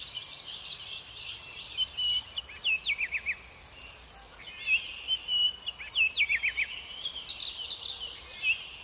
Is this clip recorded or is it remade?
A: recorded